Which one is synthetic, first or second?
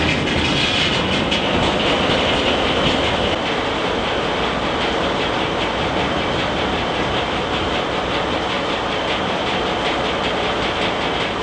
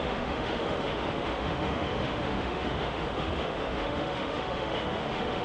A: second